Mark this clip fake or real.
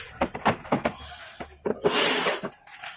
real